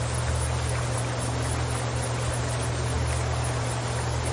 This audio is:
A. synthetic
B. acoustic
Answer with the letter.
B